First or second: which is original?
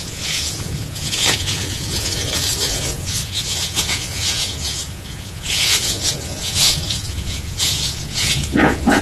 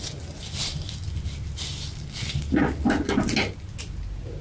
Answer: second